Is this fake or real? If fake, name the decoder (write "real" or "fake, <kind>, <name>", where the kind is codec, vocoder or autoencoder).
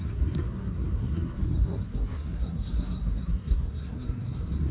fake, codec, SNAC